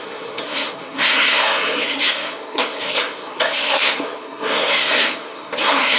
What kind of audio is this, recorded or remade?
remade